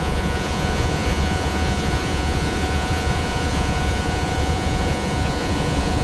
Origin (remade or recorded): remade